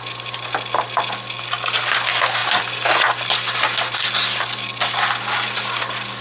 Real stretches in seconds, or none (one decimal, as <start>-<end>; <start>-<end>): 0.0-6.2